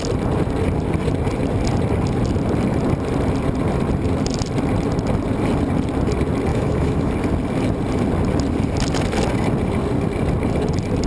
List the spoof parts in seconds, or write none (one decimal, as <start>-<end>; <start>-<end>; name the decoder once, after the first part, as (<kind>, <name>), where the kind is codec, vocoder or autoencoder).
6.5-7.1 (autoencoder, DAC-VAE)